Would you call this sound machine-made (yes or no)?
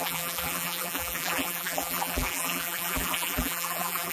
yes